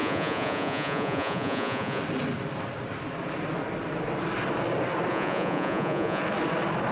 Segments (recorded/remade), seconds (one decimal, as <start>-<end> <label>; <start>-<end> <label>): 0.0-2.0 remade; 2.0-5.1 recorded; 5.1-6.2 remade; 6.2-6.9 recorded